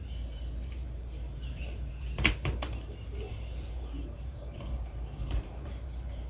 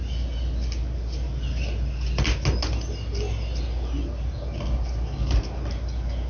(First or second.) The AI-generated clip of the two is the first